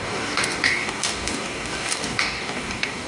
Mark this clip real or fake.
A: fake